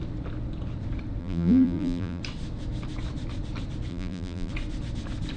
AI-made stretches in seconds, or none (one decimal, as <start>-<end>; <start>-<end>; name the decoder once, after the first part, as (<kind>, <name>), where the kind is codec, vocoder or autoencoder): 1.2-2.2 (vocoder, BigVGAN v2); 3.9-4.5